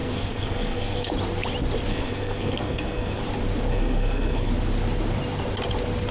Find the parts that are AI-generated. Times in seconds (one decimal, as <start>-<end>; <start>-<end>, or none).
0.0-1.1; 1.9-3.2; 3.7-4.5